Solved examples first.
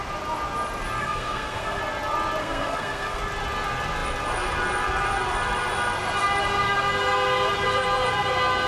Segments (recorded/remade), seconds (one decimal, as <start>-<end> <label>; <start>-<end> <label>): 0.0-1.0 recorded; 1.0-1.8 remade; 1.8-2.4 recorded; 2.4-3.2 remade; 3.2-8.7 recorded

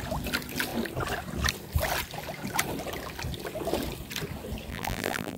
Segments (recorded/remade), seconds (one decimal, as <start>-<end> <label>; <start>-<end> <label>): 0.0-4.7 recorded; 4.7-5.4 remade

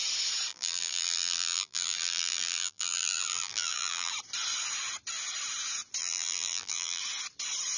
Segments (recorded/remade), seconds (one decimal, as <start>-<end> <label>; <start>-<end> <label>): 0.0-0.5 recorded; 0.5-4.1 remade; 4.1-6.0 recorded; 6.0-7.0 remade; 7.0-7.8 recorded

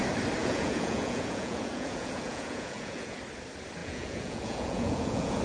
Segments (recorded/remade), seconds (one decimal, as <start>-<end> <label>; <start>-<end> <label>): 0.0-0.4 recorded; 0.4-3.2 remade; 3.2-3.8 recorded; 3.8-5.4 remade